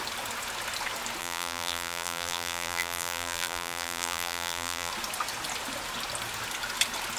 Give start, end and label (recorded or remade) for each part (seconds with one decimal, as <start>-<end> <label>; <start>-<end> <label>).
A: 0.0-1.2 recorded; 1.2-4.9 remade; 4.9-7.2 recorded